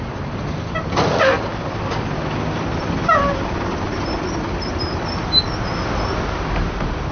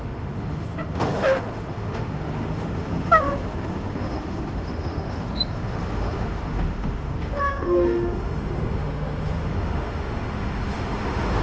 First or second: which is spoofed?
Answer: second